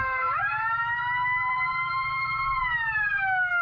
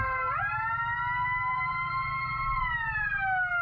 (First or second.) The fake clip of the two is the first